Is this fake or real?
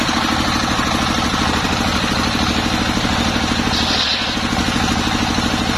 real